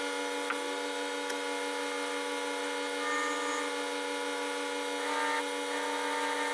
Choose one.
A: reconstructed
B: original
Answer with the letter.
B